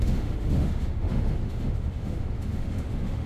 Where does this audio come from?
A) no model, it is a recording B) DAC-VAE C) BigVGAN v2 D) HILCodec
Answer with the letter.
B